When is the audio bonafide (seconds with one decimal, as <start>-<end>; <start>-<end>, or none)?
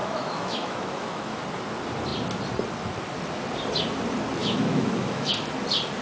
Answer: 1.4-4.4; 5.3-6.0